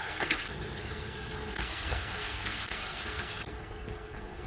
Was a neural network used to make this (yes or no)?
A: yes